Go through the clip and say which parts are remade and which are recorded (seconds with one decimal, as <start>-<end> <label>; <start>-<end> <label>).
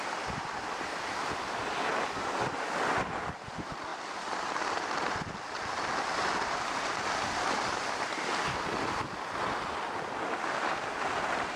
0.0-3.9 recorded; 3.9-5.8 remade; 5.8-11.6 recorded